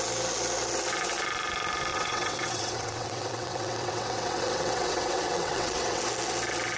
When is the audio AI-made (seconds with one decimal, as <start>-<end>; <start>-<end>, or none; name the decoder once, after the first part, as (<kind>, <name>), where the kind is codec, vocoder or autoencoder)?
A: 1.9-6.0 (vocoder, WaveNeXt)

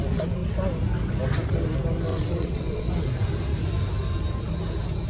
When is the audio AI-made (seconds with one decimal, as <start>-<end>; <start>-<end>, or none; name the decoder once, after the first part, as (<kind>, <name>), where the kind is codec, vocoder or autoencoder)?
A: 2.1-2.9 (vocoder, WaveNeXt)

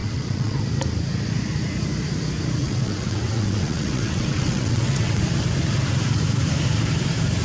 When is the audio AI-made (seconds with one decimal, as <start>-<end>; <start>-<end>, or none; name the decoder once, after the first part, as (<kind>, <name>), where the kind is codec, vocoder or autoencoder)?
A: 0.0-0.6 (vocoder, WaveNeXt); 2.6-5.2